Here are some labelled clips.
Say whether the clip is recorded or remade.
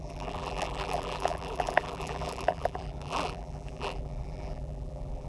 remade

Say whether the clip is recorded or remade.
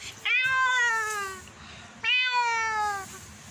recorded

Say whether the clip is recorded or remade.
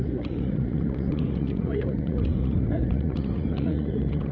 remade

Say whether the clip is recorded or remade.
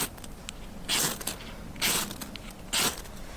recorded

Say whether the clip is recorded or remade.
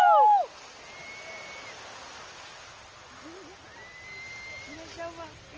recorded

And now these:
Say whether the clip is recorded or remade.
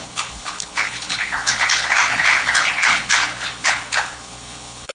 remade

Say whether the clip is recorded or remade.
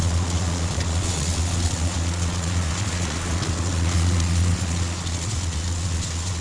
remade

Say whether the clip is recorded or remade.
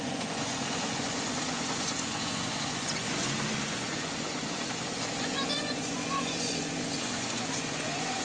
remade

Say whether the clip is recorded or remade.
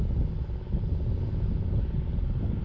recorded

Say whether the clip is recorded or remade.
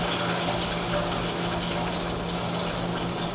recorded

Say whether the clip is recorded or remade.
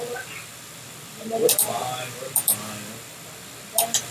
recorded